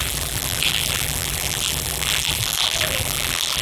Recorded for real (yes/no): no